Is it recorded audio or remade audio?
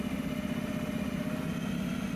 recorded